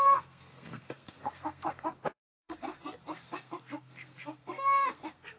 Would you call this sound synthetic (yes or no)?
yes